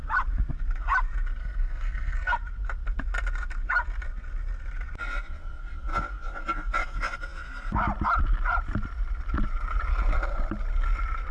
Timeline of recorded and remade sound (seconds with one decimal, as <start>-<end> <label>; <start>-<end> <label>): 0.0-1.4 recorded; 1.4-2.3 remade; 2.3-11.3 recorded